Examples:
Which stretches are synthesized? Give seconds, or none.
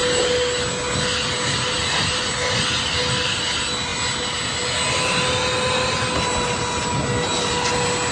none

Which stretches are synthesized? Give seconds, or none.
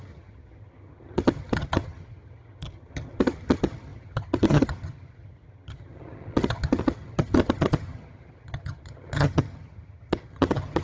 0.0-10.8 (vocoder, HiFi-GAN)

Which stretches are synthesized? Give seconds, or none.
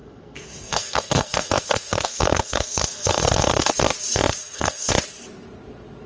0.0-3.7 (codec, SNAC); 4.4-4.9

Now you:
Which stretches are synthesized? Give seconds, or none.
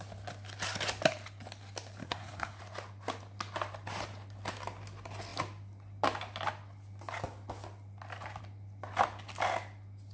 2.0-2.6 (codec, SNAC)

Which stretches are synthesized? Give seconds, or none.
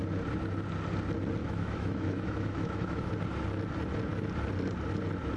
1.4-3.1 (autoencoder, DAC-VAE)